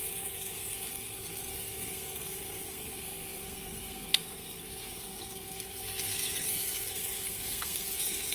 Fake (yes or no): yes